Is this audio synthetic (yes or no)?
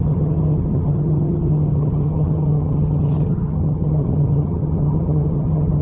yes